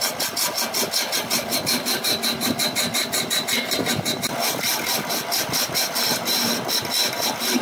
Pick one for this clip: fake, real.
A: real